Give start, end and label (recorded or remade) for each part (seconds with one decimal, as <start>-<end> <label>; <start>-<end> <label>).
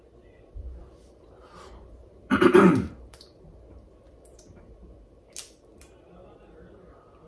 0.0-0.8 recorded; 0.8-4.1 remade; 4.1-7.3 recorded